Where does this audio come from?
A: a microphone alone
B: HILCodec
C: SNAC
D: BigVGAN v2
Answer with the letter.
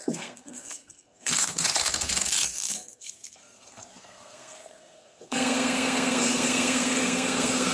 C